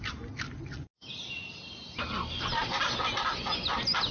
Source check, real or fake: real